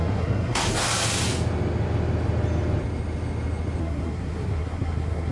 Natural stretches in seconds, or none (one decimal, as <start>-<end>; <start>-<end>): 0.6-3.8